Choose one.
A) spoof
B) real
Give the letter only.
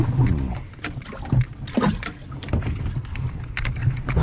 B